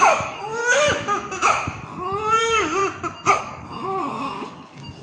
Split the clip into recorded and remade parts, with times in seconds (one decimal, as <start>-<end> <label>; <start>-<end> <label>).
0.0-0.6 remade; 0.6-2.4 recorded; 2.4-2.8 remade; 2.8-3.4 recorded; 3.4-5.0 remade